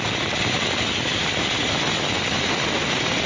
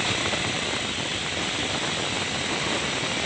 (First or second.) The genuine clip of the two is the first